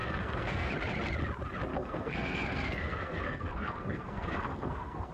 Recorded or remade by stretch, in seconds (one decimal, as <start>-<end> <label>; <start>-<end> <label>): 0.0-0.7 remade; 0.7-1.7 recorded; 1.7-5.1 remade